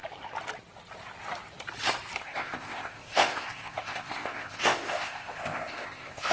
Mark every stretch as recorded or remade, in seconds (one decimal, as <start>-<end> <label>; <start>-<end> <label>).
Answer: 0.0-2.2 recorded; 2.2-6.3 remade